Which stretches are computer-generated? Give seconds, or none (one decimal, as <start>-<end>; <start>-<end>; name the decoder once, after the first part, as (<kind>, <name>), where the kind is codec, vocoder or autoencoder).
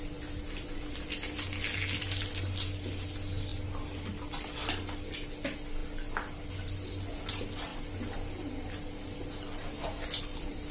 none